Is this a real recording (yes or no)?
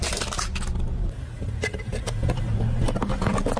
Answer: no